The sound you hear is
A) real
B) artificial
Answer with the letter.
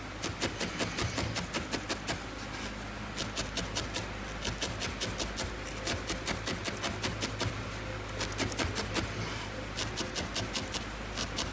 A